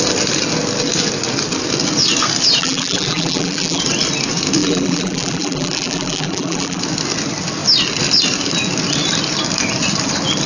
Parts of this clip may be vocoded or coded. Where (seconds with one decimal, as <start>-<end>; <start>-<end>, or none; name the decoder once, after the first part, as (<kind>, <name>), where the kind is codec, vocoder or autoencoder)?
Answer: 2.6-3.8 (vocoder, BigVGAN v2); 4.6-6.8